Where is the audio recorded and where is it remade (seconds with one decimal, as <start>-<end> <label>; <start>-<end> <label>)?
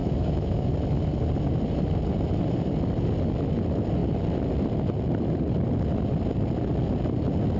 0.0-0.7 remade; 0.7-7.6 recorded